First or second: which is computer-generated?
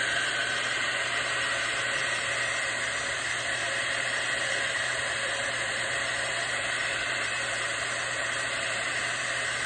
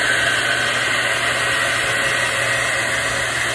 first